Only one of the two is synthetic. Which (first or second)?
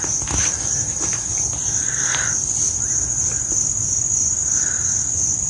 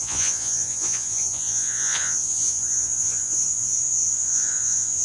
second